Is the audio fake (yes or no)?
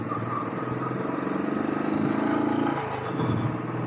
no